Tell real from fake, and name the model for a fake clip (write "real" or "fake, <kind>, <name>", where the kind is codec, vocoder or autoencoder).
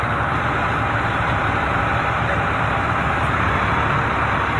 fake, vocoder, BigVGAN v2